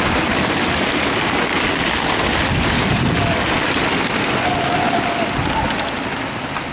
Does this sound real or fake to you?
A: real